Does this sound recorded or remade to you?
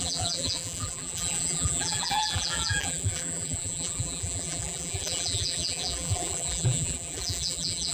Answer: remade